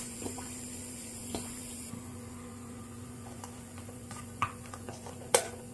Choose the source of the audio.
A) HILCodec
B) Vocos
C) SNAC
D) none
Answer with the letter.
B